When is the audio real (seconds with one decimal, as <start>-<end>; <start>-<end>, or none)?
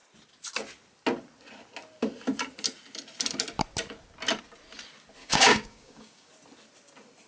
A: 0.0-5.2; 6.3-7.3